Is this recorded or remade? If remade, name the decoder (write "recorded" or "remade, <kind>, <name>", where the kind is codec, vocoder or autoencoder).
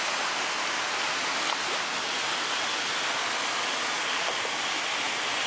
recorded